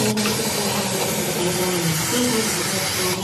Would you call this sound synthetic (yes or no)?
no